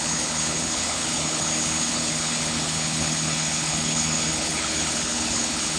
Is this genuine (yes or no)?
no